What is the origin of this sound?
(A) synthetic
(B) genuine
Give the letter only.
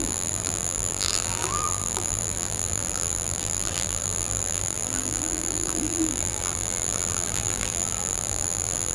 A